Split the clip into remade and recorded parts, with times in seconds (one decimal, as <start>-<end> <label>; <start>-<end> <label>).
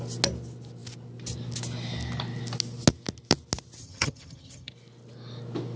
0.0-3.8 recorded; 3.8-4.7 remade; 4.7-5.8 recorded